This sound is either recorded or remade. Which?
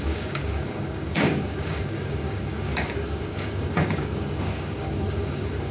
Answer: remade